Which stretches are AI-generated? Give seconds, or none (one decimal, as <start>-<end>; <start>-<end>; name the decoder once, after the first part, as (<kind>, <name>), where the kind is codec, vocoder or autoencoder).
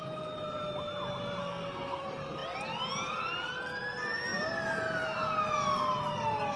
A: 1.4-2.0 (codec, SNAC)